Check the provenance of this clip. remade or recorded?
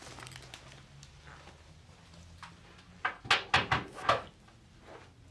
recorded